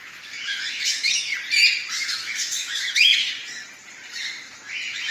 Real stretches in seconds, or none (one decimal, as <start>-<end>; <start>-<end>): 1.3-1.9; 3.4-4.1